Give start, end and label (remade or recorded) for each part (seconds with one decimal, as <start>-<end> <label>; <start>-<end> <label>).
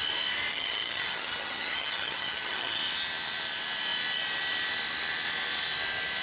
0.0-0.5 recorded; 0.5-2.8 remade; 2.8-6.2 recorded